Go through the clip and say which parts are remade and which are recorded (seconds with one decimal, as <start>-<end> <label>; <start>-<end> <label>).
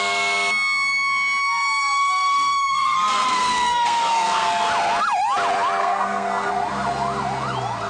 0.0-1.4 recorded; 1.4-4.7 remade; 4.7-5.8 recorded; 5.8-6.5 remade; 6.5-7.9 recorded